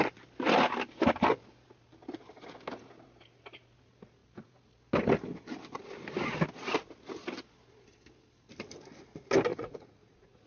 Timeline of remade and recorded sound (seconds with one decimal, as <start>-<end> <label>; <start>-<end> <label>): 0.0-9.5 recorded; 9.5-10.5 remade